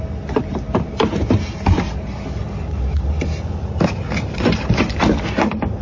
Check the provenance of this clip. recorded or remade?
recorded